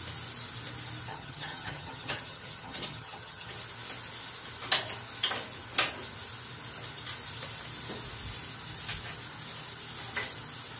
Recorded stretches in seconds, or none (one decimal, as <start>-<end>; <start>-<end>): 0.0-1.1; 3.6-10.8